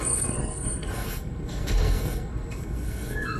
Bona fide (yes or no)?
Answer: no